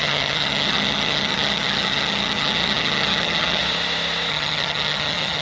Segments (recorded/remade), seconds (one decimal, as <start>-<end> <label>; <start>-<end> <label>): 0.0-3.6 remade; 3.6-4.3 recorded; 4.3-5.4 remade